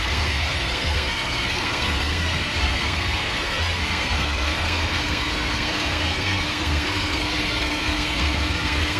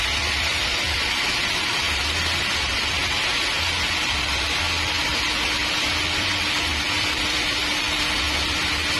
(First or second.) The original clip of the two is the second